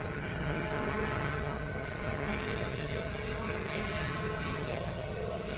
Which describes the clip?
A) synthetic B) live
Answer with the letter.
A